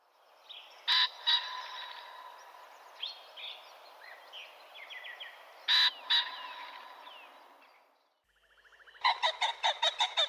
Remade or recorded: recorded